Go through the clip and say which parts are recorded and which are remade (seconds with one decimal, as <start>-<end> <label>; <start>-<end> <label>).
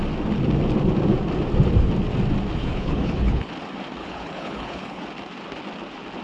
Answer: 0.0-2.6 recorded; 2.6-3.5 remade; 3.5-4.0 recorded; 4.0-5.0 remade; 5.0-6.2 recorded